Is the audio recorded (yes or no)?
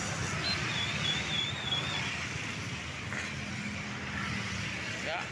yes